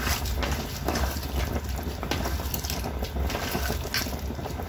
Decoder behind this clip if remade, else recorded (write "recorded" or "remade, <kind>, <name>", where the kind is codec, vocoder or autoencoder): recorded